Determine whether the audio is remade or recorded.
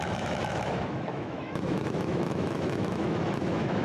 remade